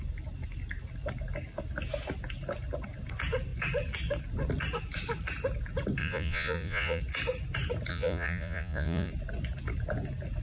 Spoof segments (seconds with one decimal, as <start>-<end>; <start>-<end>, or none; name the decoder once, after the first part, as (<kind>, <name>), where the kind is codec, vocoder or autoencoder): 6.0-7.0 (vocoder, Vocos); 7.9-9.1